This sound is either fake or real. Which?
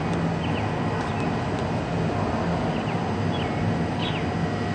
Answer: real